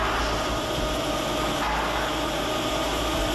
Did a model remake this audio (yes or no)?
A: no